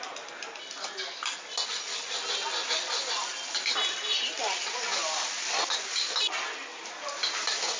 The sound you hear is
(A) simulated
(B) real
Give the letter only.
B